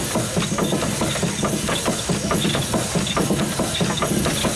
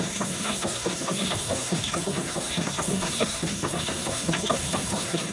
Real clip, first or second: first